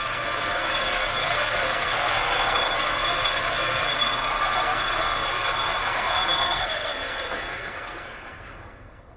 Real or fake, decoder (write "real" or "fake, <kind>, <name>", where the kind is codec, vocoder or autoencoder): fake, codec, SNAC